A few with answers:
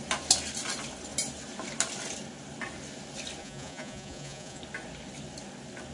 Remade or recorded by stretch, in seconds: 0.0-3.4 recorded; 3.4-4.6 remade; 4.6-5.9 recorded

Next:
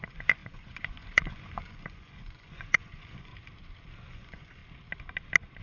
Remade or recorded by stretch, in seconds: 0.0-3.3 remade; 3.3-4.1 recorded; 4.1-4.6 remade; 4.6-5.6 recorded

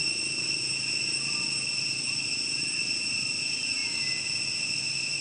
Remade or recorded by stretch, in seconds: 0.0-5.2 recorded

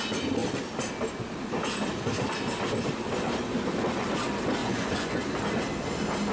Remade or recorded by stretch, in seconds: 0.0-4.6 recorded; 4.6-5.2 remade; 5.2-6.3 recorded

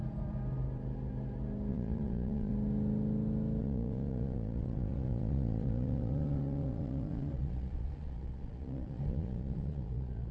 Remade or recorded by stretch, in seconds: 0.0-1.7 recorded; 1.7-2.5 remade; 2.5-3.6 recorded; 3.6-10.3 remade

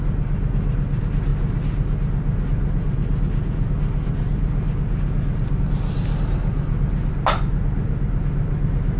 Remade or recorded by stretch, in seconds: 0.0-9.0 recorded